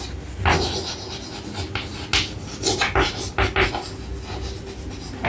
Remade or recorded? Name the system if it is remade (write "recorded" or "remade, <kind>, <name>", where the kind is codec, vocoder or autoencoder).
recorded